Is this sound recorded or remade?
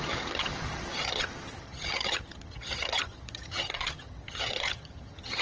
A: remade